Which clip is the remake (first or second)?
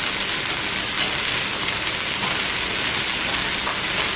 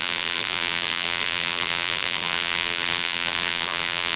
second